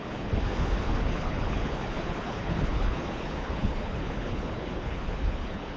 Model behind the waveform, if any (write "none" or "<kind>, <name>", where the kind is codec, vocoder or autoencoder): codec, HILCodec